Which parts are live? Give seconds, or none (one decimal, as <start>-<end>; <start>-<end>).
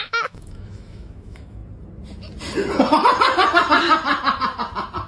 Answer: 1.6-5.1